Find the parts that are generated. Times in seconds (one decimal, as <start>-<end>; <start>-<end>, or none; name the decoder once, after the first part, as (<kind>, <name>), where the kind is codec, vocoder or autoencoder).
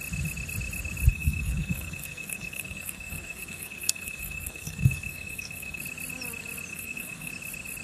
1.1-5.8 (codec, SNAC); 6.7-7.3